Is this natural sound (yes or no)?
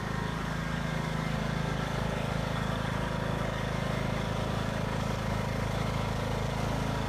no